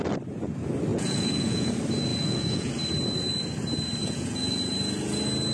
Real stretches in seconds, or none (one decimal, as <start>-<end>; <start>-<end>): 0.0-0.9; 1.7-2.1; 2.7-4.0; 4.7-5.5